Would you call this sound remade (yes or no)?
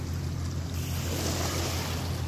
no